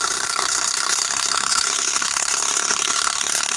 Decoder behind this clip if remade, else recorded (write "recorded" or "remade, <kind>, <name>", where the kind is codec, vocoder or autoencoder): remade, codec, SNAC